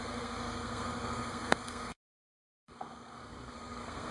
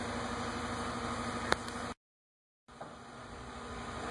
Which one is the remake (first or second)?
first